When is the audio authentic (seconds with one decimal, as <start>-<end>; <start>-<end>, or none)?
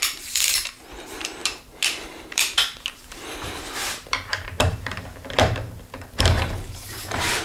none